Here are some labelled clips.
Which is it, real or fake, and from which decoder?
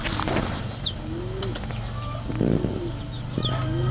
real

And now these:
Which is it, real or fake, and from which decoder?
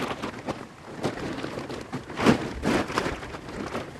real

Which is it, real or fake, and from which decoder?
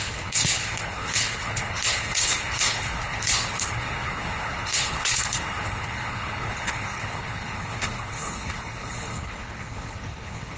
fake, codec, HILCodec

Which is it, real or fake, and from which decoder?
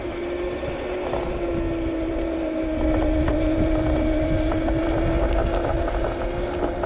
real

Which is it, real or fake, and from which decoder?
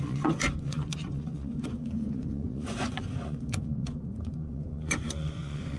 fake, vocoder, Vocos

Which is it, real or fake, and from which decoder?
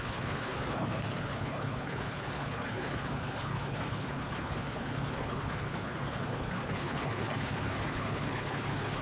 fake, codec, HILCodec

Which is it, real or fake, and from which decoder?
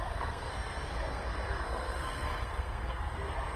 fake, codec, SNAC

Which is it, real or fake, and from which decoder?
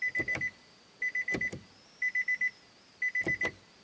real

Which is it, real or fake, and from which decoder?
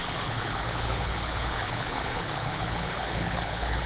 fake, codec, HILCodec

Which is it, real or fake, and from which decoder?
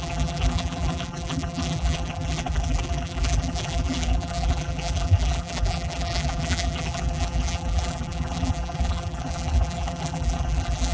fake, vocoder, BigVGAN v2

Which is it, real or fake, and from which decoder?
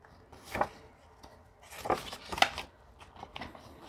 real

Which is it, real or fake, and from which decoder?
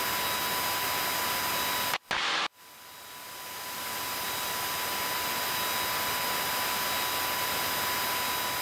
real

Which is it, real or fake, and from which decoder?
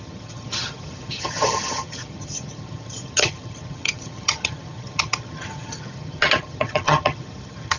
fake, vocoder, HiFi-GAN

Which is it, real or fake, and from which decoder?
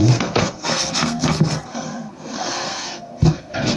fake, codec, SNAC